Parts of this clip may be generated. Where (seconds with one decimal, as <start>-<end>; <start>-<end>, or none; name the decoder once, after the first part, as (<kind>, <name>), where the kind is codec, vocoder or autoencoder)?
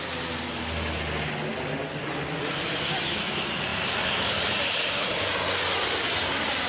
none